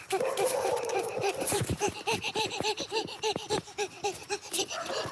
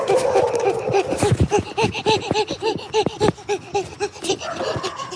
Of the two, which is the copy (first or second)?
first